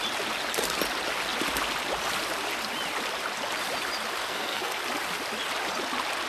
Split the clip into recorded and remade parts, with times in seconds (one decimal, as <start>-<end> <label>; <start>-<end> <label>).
0.0-4.2 recorded; 4.2-4.8 remade; 4.8-6.3 recorded